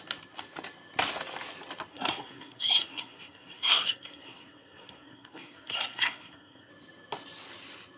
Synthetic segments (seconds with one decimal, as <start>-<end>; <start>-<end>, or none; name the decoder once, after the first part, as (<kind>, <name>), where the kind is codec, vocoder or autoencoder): 1.9-6.7 (codec, SNAC)